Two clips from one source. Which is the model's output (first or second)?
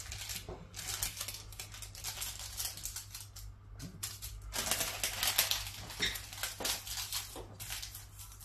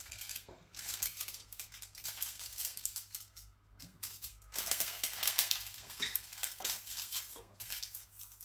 second